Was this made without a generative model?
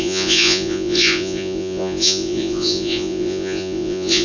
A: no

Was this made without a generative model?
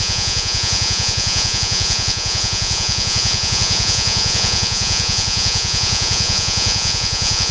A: no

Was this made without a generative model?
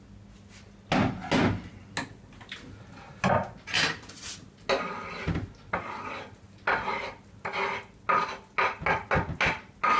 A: yes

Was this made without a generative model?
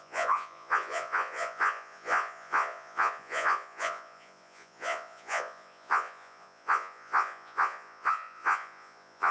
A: no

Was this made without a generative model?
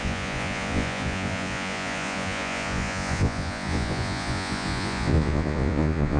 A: no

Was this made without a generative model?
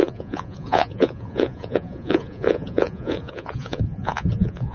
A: no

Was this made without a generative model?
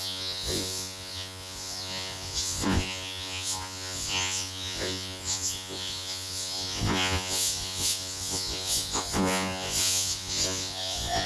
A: no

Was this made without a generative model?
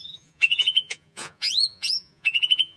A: no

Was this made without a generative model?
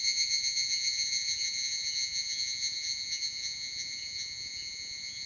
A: no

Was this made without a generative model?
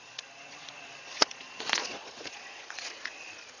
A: no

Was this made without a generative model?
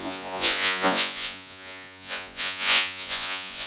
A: no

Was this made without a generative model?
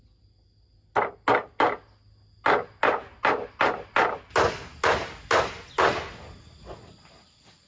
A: yes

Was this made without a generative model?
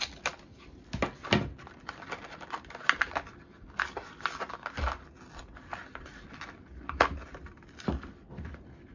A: yes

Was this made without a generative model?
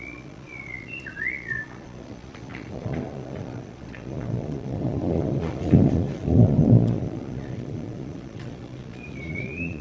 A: no